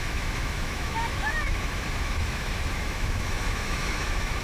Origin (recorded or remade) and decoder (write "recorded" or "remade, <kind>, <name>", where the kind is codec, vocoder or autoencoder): remade, autoencoder, DAC-VAE